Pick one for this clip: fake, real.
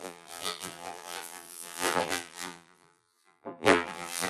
fake